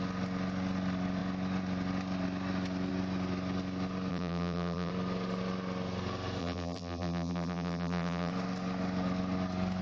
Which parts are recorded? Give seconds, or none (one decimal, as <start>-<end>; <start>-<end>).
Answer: 0.0-4.1; 4.9-6.4; 8.3-9.8